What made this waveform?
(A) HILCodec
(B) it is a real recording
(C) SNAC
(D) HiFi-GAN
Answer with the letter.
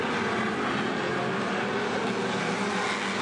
B